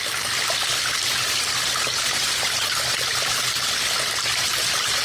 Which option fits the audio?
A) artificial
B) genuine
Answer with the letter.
B